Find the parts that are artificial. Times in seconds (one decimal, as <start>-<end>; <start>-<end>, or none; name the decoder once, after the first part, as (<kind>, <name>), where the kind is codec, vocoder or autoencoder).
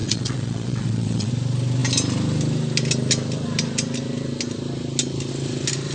0.0-1.3 (vocoder, Vocos)